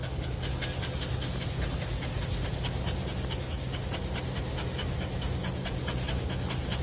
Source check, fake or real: real